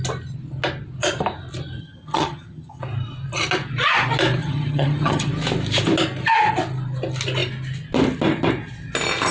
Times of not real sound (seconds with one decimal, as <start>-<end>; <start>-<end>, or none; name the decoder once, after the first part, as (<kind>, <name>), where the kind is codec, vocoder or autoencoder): 1.8-2.8 (vocoder, HiFi-GAN); 4.4-5.3

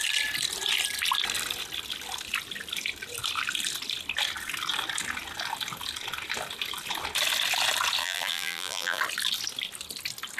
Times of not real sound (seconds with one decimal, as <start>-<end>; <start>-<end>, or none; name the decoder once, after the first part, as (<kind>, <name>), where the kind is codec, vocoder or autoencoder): 8.0-9.0 (vocoder, BigVGAN v2)

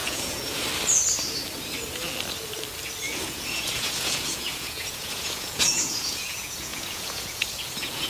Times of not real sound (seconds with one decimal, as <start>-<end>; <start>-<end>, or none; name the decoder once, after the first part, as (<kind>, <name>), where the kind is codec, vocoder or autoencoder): 0.0-0.6 (vocoder, Vocos); 3.1-8.1

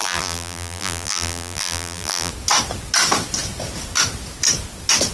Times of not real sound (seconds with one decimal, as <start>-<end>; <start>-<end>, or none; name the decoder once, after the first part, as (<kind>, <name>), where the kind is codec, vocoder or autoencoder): 0.0-2.3 (vocoder, BigVGAN v2)

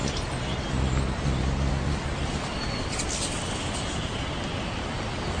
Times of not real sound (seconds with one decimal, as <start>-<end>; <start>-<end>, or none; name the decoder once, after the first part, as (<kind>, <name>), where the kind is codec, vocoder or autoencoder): none

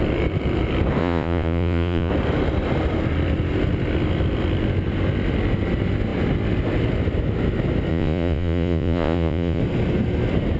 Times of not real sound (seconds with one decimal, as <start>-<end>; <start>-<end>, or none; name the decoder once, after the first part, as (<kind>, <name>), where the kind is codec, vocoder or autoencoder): 1.0-2.1 (vocoder, Vocos); 7.9-9.6